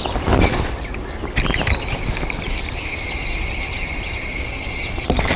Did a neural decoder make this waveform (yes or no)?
yes